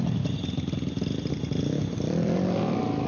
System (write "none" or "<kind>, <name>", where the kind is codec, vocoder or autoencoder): none